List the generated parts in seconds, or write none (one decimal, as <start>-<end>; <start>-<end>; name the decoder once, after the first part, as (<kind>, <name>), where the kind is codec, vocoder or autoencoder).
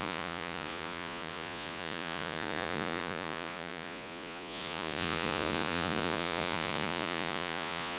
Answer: 0.0-8.0 (vocoder, Vocos)